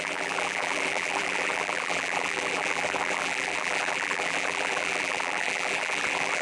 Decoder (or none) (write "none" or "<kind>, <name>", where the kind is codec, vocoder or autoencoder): vocoder, BigVGAN v2